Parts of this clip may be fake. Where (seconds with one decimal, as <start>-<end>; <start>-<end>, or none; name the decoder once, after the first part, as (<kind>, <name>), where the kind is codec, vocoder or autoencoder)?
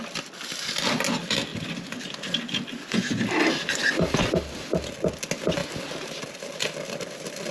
5.6-7.5 (vocoder, BigVGAN v2)